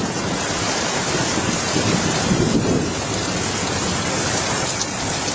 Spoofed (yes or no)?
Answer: yes